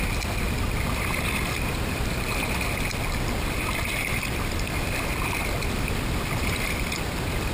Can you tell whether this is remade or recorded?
recorded